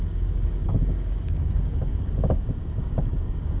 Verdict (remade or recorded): remade